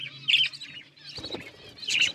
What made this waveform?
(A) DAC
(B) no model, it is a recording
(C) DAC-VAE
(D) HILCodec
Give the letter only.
B